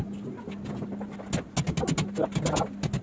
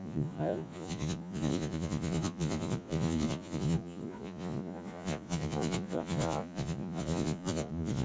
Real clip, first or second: first